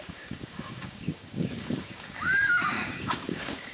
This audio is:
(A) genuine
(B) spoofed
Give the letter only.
B